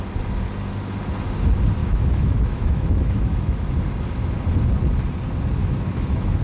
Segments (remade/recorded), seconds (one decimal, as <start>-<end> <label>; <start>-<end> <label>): 0.0-1.8 recorded; 1.8-3.7 remade; 3.7-5.6 recorded; 5.6-6.4 remade